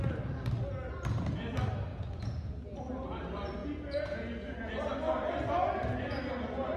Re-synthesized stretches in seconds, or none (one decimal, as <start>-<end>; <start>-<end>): 1.9-2.6; 3.6-4.7